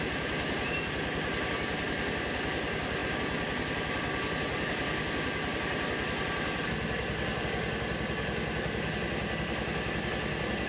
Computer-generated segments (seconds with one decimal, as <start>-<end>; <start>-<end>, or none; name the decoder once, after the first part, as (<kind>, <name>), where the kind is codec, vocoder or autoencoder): none